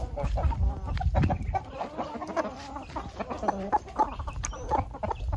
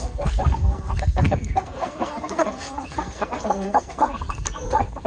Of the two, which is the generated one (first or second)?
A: second